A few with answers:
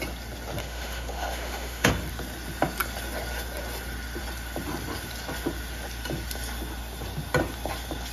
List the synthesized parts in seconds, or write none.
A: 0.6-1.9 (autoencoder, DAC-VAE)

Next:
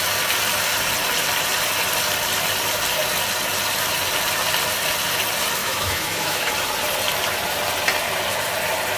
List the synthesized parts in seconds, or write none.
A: 5.6-6.5 (autoencoder, DAC-VAE)

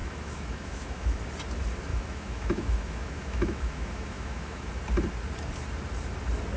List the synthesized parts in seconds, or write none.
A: 0.0-1.2 (autoencoder, DAC-VAE); 1.9-4.7

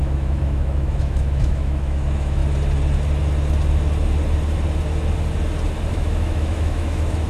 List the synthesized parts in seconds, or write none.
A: 0.0-2.4 (autoencoder, DAC-VAE); 5.9-7.3

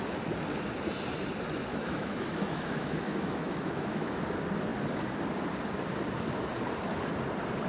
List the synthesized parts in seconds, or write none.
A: 1.7-4.2 (autoencoder, DAC-VAE)

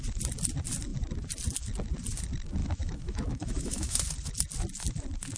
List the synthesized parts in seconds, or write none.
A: 2.6-4.0 (autoencoder, DAC-VAE)

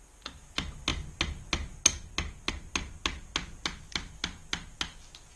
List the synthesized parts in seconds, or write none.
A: none

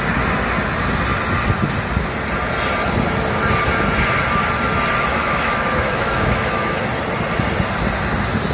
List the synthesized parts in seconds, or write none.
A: 5.1-6.8 (autoencoder, DAC-VAE)